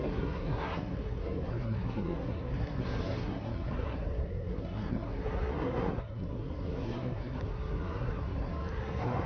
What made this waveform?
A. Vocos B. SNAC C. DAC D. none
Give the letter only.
B